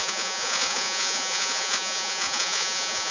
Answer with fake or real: fake